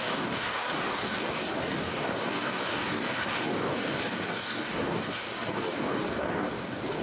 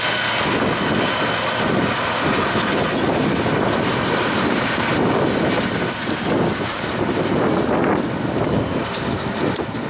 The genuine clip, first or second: second